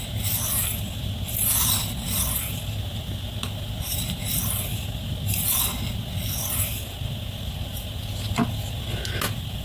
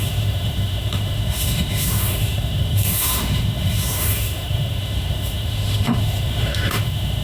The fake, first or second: second